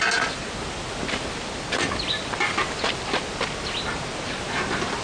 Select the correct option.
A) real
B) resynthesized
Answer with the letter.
A